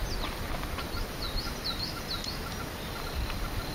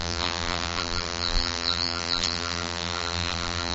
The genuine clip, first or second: first